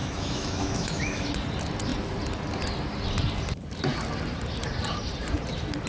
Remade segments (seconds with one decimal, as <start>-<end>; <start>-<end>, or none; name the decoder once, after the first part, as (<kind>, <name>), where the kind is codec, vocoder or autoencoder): 0.0-1.3 (autoencoder, DAC-VAE)